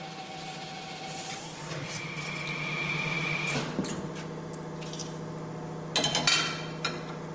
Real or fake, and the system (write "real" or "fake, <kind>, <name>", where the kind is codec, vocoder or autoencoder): real